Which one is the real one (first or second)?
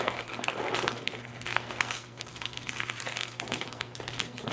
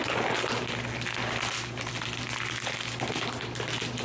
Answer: second